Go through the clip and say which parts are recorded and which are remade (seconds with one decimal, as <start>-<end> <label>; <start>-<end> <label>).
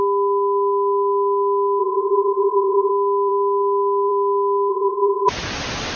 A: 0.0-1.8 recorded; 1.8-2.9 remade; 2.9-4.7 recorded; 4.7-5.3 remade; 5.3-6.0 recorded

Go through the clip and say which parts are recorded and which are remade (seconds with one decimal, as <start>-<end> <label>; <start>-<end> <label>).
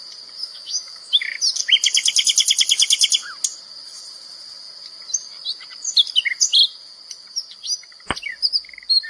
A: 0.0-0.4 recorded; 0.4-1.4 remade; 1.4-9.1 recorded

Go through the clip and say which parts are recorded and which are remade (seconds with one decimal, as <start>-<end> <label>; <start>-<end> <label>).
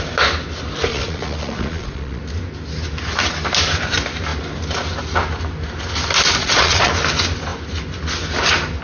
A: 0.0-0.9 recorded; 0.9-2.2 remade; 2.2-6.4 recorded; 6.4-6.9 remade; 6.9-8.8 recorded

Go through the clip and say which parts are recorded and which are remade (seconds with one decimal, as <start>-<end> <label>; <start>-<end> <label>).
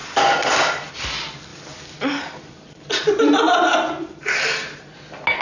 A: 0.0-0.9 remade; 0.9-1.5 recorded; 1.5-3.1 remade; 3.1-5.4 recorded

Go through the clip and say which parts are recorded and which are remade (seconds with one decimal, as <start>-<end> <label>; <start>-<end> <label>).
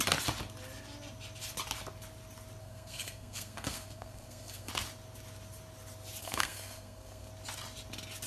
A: 0.0-2.6 recorded; 2.6-4.7 remade; 4.7-6.2 recorded; 6.2-7.3 remade; 7.3-8.3 recorded